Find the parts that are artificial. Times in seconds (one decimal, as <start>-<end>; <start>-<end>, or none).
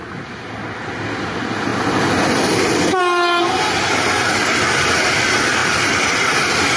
5.6-6.8